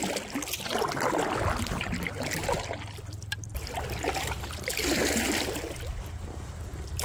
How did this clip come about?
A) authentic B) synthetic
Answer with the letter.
A